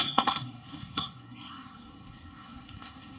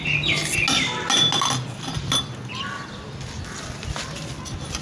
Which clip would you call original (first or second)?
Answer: second